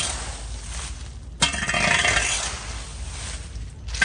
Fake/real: real